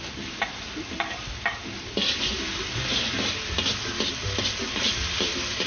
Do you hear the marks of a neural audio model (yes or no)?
yes